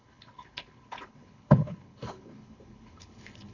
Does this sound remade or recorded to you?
remade